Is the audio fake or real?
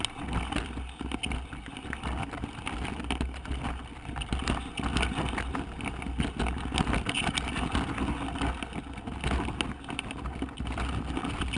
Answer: real